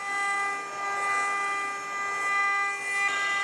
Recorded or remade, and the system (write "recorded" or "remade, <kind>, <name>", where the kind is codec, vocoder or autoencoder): recorded